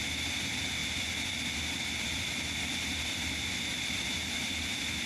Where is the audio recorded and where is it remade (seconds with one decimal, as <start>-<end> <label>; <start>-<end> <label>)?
0.0-5.1 recorded